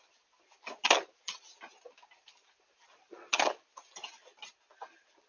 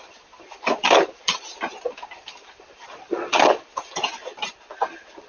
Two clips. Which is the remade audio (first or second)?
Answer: second